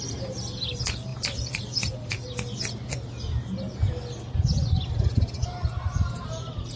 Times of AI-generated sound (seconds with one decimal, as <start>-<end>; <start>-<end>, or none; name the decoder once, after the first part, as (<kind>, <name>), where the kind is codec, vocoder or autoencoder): none